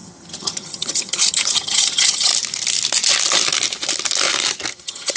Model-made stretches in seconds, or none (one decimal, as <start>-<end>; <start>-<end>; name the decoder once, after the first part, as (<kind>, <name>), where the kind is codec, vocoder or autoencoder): 0.0-2.3 (vocoder, HiFi-GAN); 4.7-5.2

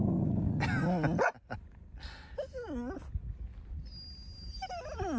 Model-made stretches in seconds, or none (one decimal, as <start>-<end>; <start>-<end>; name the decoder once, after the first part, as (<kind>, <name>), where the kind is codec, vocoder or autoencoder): none

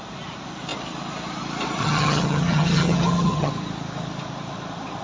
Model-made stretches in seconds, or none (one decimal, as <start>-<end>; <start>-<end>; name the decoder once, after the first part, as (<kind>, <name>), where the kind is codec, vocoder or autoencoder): 1.8-3.5 (vocoder, HiFi-GAN)

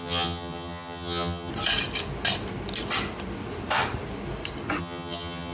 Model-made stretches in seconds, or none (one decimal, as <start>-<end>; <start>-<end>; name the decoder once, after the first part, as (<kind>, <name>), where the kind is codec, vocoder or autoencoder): 0.0-1.5 (vocoder, HiFi-GAN); 4.8-5.5